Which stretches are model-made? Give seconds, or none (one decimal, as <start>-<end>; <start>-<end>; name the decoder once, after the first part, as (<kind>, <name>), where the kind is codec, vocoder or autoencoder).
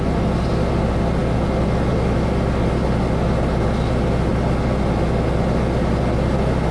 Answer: none